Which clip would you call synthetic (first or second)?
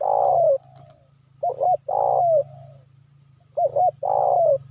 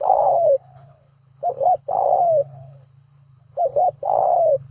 second